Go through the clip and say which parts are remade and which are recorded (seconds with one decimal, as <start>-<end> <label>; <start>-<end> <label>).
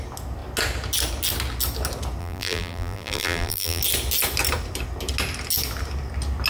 0.0-2.2 recorded; 2.2-3.8 remade; 3.8-6.5 recorded